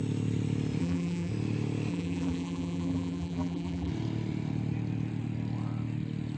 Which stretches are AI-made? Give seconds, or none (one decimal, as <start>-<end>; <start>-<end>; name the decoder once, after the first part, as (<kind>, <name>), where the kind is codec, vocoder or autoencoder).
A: 0.8-1.3 (vocoder, BigVGAN v2); 1.9-3.9